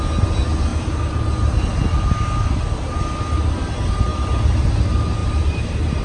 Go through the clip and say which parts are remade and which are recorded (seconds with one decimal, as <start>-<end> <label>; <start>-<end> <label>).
0.0-0.7 recorded; 0.7-1.7 remade; 1.7-4.1 recorded; 4.1-4.8 remade; 4.8-5.2 recorded; 5.2-6.0 remade